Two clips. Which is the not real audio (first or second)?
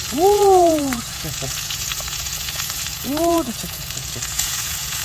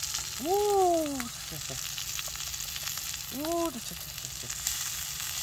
first